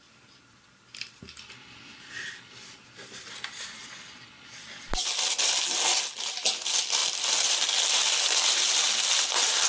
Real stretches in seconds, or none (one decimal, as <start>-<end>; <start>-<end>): 0.0-9.7

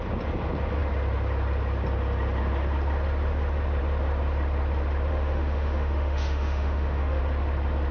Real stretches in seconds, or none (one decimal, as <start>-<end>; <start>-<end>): 0.0-5.1; 7.2-7.9